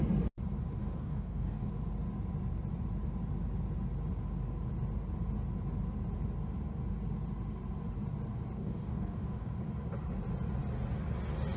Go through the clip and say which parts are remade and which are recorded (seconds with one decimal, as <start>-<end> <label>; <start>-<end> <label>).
0.0-0.8 recorded; 0.8-1.7 remade; 1.7-8.6 recorded; 8.6-9.7 remade; 9.7-11.6 recorded